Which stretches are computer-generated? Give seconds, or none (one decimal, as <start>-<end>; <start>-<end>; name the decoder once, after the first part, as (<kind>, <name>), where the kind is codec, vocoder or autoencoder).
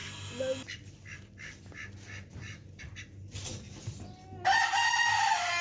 none